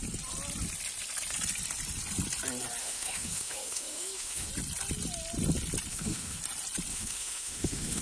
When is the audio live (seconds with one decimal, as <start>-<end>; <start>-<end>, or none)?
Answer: 0.0-2.8; 4.5-5.9; 6.4-6.9